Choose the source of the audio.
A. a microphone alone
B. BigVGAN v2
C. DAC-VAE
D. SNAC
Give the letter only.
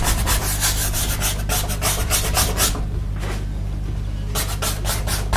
A